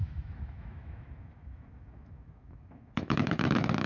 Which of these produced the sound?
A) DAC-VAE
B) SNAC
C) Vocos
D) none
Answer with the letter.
A